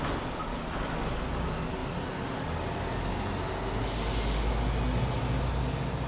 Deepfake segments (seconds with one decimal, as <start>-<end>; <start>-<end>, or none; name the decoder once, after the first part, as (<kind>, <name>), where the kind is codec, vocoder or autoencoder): 0.5-1.2 (autoencoder, DAC-VAE)